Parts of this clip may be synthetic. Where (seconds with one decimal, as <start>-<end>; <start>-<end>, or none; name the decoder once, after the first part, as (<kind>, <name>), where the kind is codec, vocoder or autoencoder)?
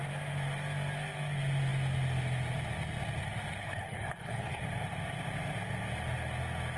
3.6-4.6 (codec, HILCodec)